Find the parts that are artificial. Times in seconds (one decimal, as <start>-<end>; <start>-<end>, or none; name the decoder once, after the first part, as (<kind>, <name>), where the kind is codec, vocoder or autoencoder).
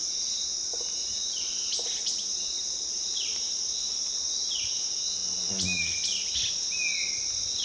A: 0.0-4.5 (vocoder, BigVGAN v2)